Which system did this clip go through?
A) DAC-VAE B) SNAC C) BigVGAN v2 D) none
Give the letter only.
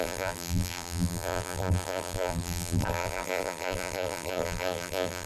C